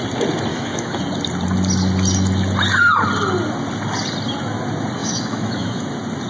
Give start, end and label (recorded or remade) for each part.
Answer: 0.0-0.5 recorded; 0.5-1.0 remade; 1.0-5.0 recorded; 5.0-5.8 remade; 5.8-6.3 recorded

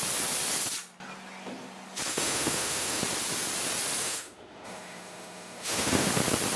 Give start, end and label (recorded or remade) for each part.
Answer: 0.0-2.1 recorded; 2.1-3.0 remade; 3.0-4.0 recorded; 4.0-6.1 remade; 6.1-6.6 recorded

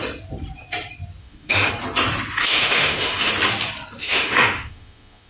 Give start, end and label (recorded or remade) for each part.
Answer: 0.0-1.2 recorded; 1.2-1.7 remade; 1.7-2.4 recorded; 2.4-3.3 remade; 3.3-4.0 recorded; 4.0-5.3 remade

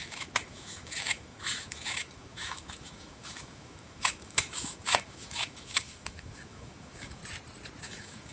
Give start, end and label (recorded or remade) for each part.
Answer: 0.0-7.2 remade; 7.2-7.8 recorded; 7.8-8.3 remade

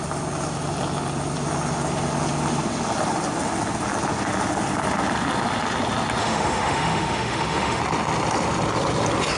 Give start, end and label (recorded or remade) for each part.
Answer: 0.0-6.2 recorded; 6.2-7.8 remade; 7.8-9.4 recorded

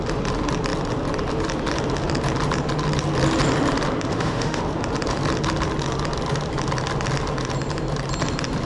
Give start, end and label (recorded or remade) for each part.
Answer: 0.0-4.1 recorded; 4.1-4.6 remade; 4.6-8.7 recorded